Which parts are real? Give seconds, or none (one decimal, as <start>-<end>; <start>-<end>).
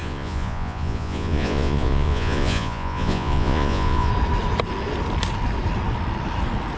4.1-6.8